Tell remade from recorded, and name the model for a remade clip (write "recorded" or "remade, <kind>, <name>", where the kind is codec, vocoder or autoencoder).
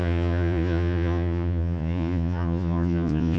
remade, vocoder, Vocos